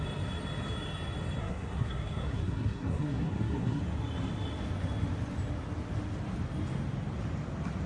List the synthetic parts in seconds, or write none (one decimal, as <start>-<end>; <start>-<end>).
1.4-3.8